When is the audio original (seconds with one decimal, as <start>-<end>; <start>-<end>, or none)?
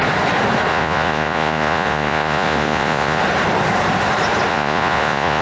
0.0-0.7; 3.2-4.5